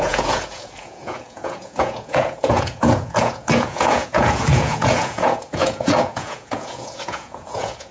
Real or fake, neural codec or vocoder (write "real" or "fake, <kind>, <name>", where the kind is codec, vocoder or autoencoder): fake, vocoder, Vocos